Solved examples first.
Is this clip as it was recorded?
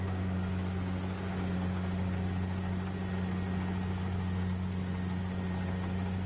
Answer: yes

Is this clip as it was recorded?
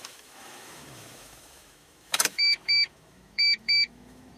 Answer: no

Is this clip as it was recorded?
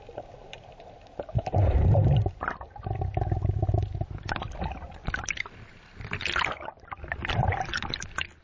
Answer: yes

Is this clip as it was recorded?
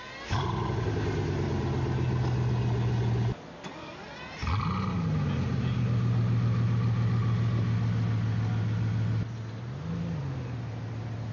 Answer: yes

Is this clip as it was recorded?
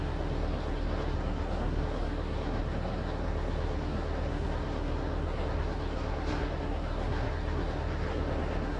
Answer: no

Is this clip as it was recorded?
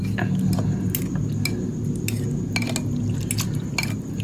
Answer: yes